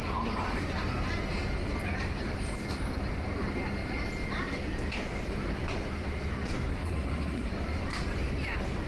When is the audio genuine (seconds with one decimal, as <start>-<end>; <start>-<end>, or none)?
0.0-6.7; 7.5-8.9